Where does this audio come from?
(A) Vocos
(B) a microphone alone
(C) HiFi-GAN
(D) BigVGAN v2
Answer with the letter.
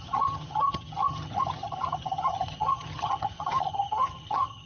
C